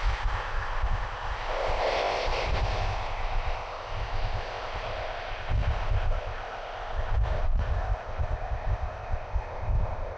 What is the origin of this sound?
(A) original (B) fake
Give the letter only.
B